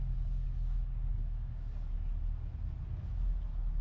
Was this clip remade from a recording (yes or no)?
no